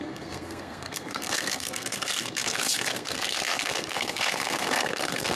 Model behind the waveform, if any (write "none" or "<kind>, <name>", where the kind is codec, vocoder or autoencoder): codec, SNAC